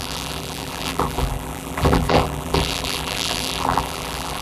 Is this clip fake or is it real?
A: fake